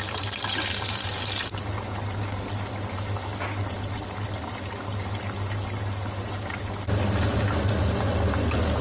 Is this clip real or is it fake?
real